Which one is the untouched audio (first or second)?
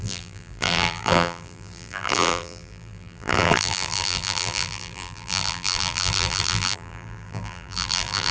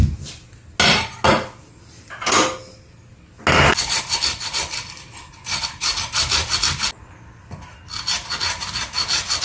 second